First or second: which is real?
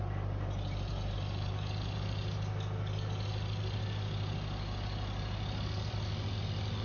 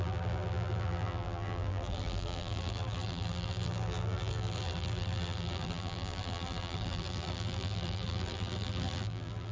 first